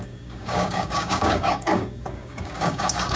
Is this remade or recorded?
remade